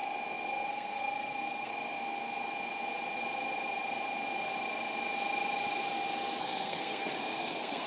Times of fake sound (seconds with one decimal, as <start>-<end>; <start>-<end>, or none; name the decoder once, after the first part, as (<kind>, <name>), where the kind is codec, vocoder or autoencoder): 0.7-1.7 (codec, SNAC); 6.4-7.9